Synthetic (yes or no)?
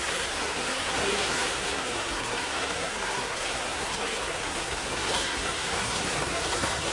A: yes